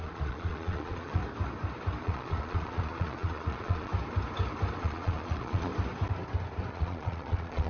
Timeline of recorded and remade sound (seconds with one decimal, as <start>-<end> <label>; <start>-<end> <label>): 0.0-1.2 remade; 1.2-2.0 recorded; 2.0-3.9 remade; 3.9-4.8 recorded; 4.8-5.7 remade; 5.7-6.7 recorded; 6.7-7.7 remade